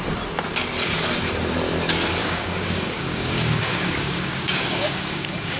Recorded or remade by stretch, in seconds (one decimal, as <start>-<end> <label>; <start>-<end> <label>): 0.0-2.2 recorded; 2.2-5.6 remade